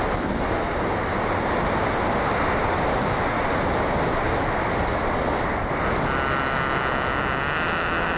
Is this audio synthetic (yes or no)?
no